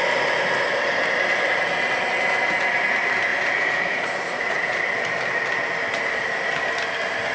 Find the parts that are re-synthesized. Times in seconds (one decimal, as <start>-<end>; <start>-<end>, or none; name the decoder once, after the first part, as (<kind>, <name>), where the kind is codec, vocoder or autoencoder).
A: 3.3-4.8 (vocoder, Vocos)